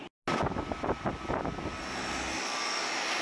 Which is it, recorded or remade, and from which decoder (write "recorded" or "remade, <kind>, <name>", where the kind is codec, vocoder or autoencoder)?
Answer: recorded